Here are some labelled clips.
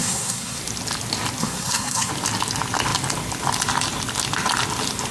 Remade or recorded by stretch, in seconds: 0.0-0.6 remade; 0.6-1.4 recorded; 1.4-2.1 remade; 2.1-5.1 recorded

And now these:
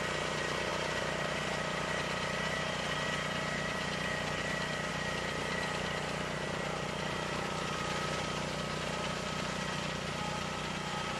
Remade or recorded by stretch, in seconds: 0.0-11.2 recorded

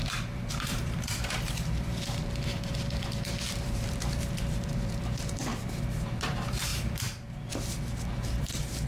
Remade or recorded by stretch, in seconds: 0.0-5.5 remade; 5.5-6.0 recorded; 6.0-6.7 remade; 6.7-8.4 recorded; 8.4-8.9 remade

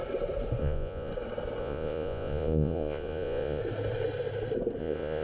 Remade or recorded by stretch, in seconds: 0.0-0.6 recorded; 0.6-1.1 remade; 1.1-1.6 recorded; 1.6-3.6 remade; 3.6-4.8 recorded; 4.8-5.2 remade

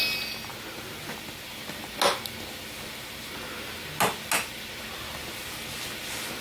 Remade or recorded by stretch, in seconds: 0.0-6.4 recorded

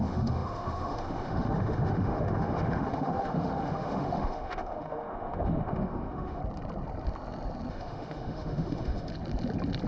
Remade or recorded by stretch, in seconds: 0.0-6.4 remade; 6.4-7.7 recorded; 7.7-9.1 remade; 9.1-9.9 recorded